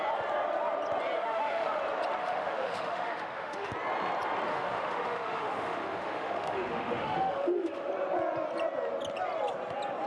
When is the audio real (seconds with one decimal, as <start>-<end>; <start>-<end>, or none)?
0.0-1.2; 1.8-2.2; 3.7-4.5; 7.9-10.1